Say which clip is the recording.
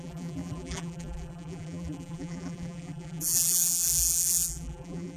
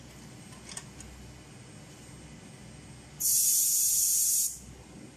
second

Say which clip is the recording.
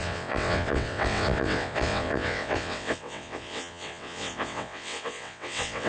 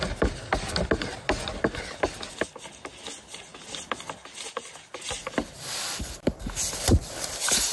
second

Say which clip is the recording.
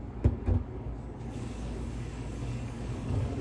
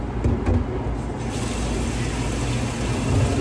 second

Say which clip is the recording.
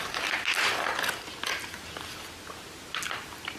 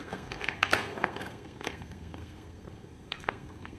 first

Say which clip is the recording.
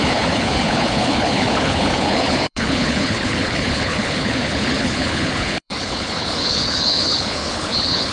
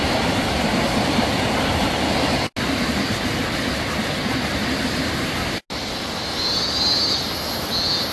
second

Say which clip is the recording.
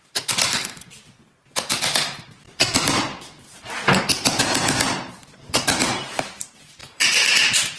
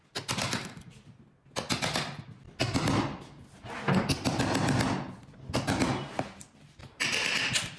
second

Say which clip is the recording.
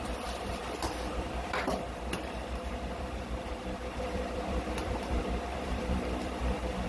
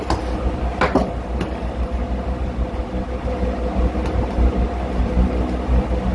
second